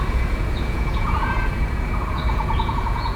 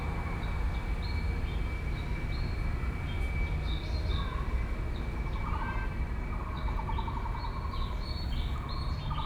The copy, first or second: first